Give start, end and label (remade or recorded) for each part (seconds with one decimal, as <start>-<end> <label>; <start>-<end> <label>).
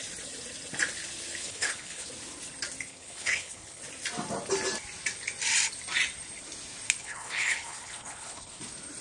0.0-1.4 recorded; 1.4-2.1 remade; 2.1-2.9 recorded; 2.9-3.8 remade; 3.8-7.0 recorded; 7.0-8.6 remade; 8.6-9.0 recorded